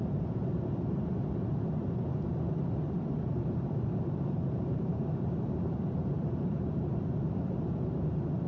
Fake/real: fake